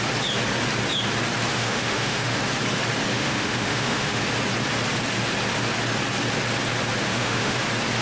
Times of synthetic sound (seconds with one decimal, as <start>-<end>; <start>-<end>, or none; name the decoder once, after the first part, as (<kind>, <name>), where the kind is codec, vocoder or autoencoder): 1.5-2.4 (autoencoder, DAC-VAE); 3.1-4.2; 7.1-7.6